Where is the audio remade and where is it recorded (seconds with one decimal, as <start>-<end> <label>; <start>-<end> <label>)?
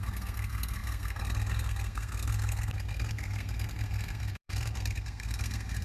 0.0-5.8 remade